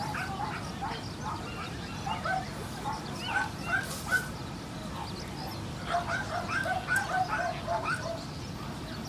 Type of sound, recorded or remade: recorded